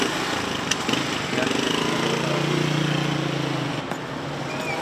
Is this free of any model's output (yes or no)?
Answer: yes